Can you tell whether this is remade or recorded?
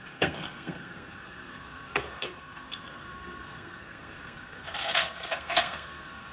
remade